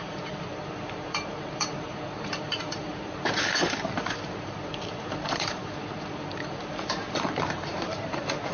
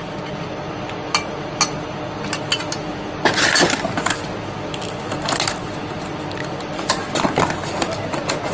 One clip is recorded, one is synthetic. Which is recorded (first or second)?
second